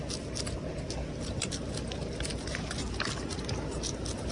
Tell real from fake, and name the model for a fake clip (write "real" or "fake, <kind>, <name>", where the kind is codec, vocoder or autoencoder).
real